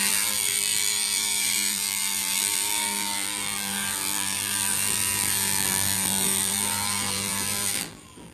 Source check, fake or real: fake